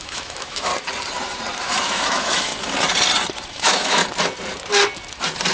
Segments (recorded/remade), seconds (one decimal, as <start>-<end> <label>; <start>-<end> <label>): 0.0-0.7 remade; 0.7-1.6 recorded; 1.6-2.5 remade; 2.5-3.5 recorded; 3.5-4.0 remade; 4.0-5.5 recorded

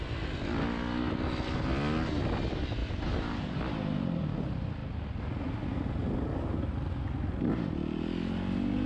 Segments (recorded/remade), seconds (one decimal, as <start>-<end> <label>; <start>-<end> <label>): 0.0-2.8 recorded; 2.8-3.6 remade; 3.6-8.9 recorded

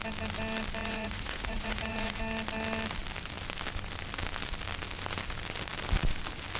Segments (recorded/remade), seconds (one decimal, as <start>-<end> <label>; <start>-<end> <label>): 0.0-0.8 recorded; 0.8-2.2 remade; 2.2-6.6 recorded

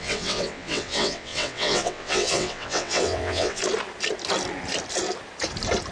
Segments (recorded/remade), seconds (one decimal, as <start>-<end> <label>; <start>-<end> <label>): 0.0-3.6 remade; 3.6-5.9 recorded

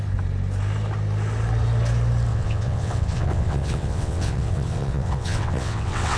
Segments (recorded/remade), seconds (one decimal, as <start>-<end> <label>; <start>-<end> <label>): 0.0-2.3 recorded; 2.3-6.2 remade

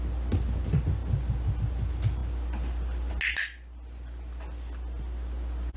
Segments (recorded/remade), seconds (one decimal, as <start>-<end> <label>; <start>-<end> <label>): 0.0-5.8 recorded